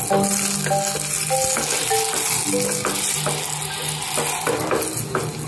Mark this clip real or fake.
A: real